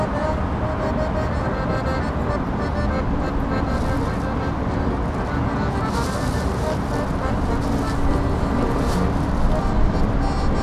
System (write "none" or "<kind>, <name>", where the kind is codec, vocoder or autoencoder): none